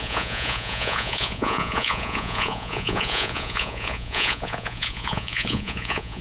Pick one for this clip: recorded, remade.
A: remade